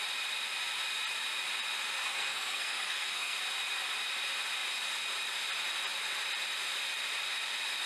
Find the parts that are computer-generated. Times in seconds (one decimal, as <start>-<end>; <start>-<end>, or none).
2.0-3.4